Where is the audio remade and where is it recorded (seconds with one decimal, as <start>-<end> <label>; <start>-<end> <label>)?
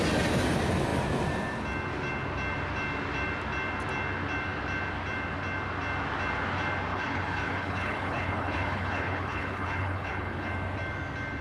0.0-6.9 recorded; 6.9-10.5 remade; 10.5-11.4 recorded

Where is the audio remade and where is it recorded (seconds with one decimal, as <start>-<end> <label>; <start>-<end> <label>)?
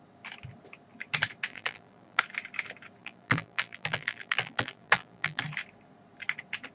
0.0-1.5 recorded; 1.5-2.2 remade; 2.2-3.0 recorded; 3.0-5.4 remade; 5.4-6.7 recorded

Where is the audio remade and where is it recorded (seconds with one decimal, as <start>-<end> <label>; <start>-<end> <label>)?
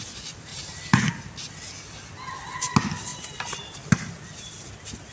0.0-0.5 recorded; 0.5-1.1 remade; 1.1-5.1 recorded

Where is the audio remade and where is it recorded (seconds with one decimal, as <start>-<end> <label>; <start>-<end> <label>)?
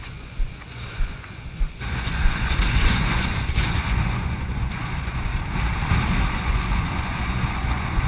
0.0-5.3 remade; 5.3-6.3 recorded; 6.3-8.1 remade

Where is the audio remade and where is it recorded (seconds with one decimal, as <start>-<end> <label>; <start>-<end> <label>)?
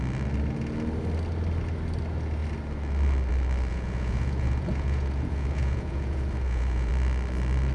0.0-3.7 recorded; 3.7-6.9 remade; 6.9-7.7 recorded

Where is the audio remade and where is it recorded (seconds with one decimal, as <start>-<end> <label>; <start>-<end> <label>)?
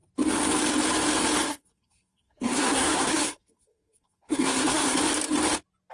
0.0-1.5 recorded; 1.5-5.0 remade; 5.0-5.9 recorded